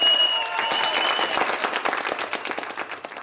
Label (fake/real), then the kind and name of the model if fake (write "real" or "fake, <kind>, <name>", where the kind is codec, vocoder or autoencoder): real